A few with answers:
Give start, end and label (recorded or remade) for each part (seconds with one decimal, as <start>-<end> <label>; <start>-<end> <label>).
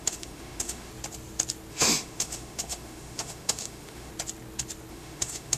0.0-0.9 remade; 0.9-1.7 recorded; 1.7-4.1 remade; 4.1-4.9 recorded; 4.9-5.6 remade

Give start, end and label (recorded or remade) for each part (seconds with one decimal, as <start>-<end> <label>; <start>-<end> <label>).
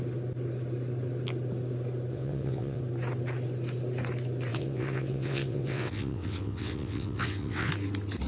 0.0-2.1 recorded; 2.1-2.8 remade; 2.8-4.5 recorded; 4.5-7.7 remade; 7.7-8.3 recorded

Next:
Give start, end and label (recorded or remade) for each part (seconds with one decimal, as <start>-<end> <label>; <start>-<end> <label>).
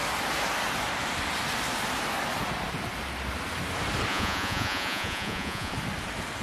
0.0-4.1 recorded; 4.1-5.7 remade; 5.7-6.4 recorded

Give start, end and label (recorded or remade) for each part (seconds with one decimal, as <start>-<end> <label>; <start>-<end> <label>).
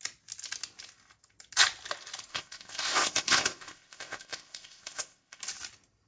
0.0-2.3 recorded; 2.3-5.4 remade; 5.4-6.1 recorded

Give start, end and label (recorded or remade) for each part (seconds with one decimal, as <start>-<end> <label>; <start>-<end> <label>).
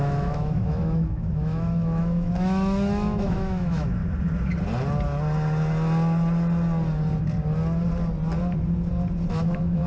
0.0-4.0 remade; 4.0-9.3 recorded; 9.3-9.9 remade